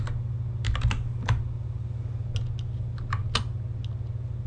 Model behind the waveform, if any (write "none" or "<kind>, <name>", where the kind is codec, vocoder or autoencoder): none